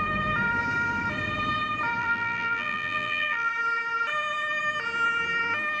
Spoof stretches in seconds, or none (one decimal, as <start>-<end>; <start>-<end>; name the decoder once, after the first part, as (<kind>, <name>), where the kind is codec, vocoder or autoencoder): 2.0-3.5 (vocoder, BigVGAN v2)